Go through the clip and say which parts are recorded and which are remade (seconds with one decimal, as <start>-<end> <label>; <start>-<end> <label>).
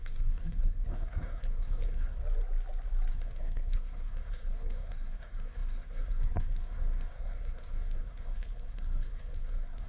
0.0-2.2 remade; 2.2-3.1 recorded; 3.1-9.9 remade